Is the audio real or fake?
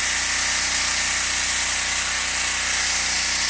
real